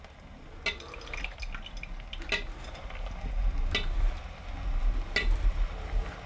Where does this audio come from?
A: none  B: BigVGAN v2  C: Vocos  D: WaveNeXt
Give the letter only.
A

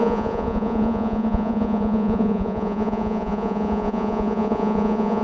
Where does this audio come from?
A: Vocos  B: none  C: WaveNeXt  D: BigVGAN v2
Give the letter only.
A